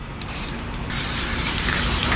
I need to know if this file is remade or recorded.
remade